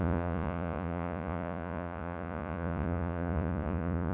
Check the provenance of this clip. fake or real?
fake